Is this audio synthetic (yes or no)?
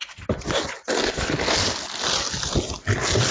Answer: no